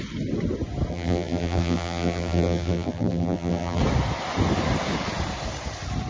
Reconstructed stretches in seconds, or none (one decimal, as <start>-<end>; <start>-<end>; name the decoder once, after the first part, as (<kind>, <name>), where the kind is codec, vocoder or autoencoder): 0.9-3.8 (vocoder, BigVGAN v2)